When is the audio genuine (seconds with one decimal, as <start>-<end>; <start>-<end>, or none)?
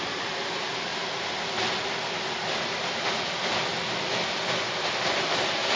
0.0-5.8